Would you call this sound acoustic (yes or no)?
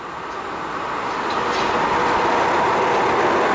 yes